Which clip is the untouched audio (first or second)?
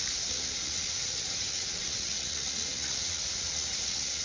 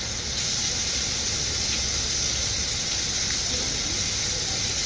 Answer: second